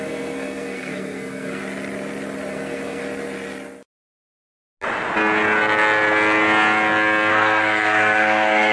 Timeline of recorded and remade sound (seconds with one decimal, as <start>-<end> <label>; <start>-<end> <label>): 0.0-1.6 remade; 1.6-2.5 recorded; 2.5-3.0 remade; 3.0-7.3 recorded; 7.3-8.7 remade